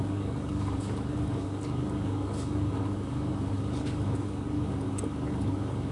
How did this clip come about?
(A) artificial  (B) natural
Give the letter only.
A